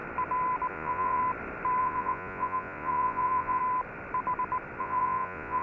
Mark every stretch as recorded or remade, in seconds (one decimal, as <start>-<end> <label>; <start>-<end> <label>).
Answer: 0.0-0.7 recorded; 0.7-1.2 remade; 1.2-1.8 recorded; 1.8-3.6 remade; 3.6-4.8 recorded; 4.8-5.6 remade